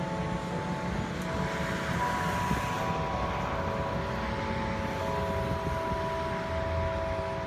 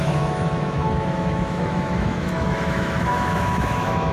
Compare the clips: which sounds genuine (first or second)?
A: first